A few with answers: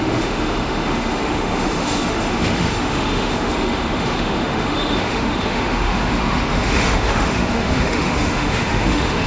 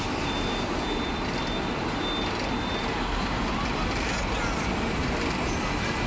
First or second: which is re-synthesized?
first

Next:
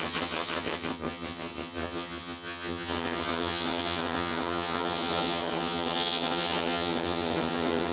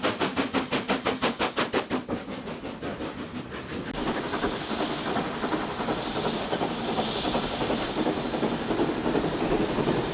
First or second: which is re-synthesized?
first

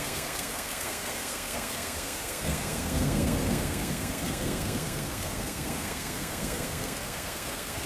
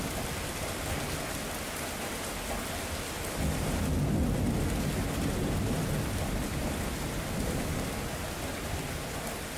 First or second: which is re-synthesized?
first